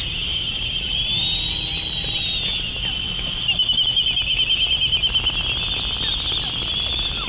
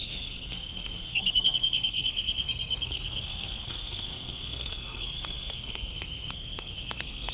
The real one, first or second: first